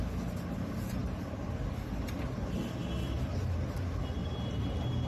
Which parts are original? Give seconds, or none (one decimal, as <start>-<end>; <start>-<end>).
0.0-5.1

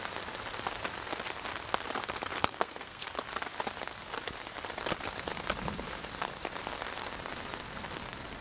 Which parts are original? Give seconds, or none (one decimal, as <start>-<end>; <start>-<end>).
0.0-2.4; 3.1-8.4

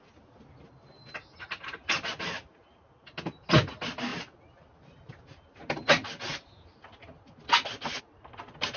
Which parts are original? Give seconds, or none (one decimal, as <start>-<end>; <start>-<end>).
0.0-8.8

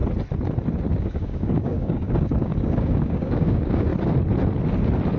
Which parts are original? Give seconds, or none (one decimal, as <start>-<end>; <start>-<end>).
0.0-1.0; 3.9-5.2

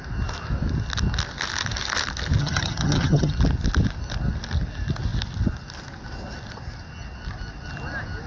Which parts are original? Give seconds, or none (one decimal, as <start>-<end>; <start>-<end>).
0.0-2.4; 3.3-8.3

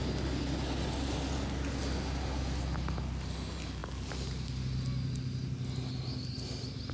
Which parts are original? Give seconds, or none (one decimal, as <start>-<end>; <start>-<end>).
0.0-6.9